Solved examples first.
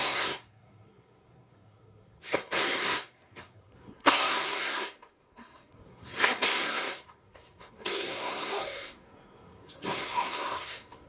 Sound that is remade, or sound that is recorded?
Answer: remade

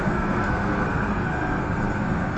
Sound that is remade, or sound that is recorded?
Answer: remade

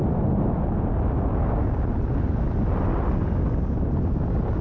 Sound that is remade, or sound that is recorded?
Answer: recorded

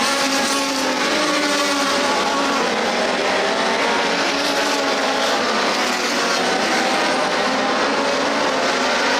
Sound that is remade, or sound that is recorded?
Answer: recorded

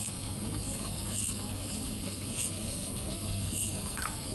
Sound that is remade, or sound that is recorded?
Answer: remade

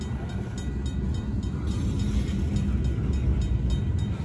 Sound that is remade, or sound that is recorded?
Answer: recorded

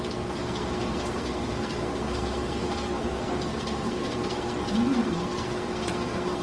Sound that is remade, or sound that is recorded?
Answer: remade